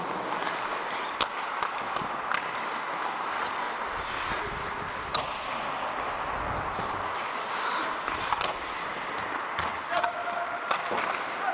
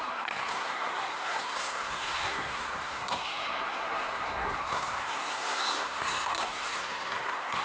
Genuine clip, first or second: first